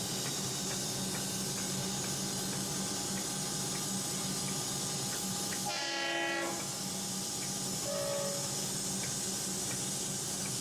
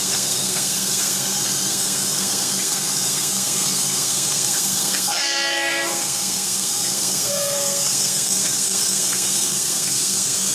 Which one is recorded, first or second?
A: first